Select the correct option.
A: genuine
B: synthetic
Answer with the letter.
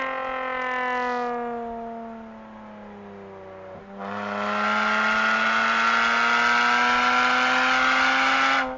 A